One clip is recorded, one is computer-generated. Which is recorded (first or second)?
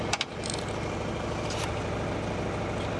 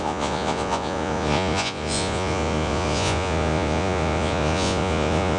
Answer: first